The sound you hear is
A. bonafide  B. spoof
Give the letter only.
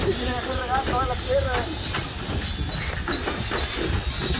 A